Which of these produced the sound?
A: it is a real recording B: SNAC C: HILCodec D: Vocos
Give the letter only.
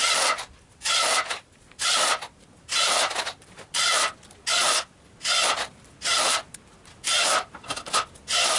A